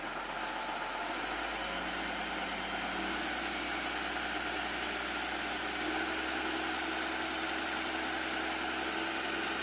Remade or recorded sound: recorded